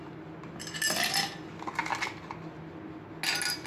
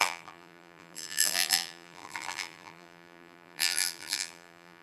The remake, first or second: second